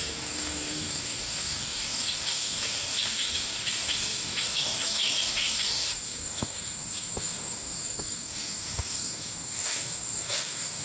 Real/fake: fake